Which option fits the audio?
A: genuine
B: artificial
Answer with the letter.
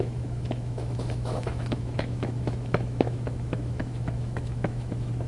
B